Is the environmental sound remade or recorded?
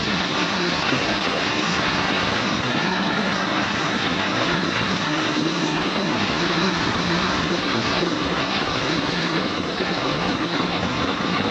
remade